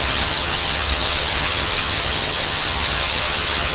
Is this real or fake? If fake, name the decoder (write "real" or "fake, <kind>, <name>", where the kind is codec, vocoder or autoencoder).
fake, vocoder, HiFi-GAN